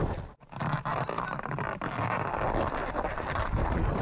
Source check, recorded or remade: recorded